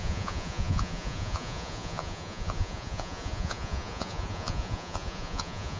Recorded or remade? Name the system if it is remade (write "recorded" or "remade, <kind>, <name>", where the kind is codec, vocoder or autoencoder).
remade, vocoder, Vocos